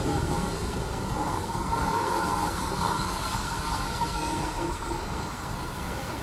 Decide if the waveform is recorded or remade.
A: remade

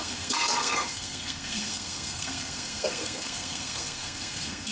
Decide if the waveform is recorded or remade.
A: remade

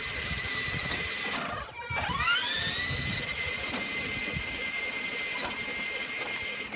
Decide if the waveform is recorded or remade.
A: recorded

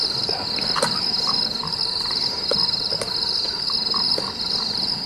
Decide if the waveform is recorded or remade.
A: recorded